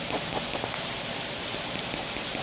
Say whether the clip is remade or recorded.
recorded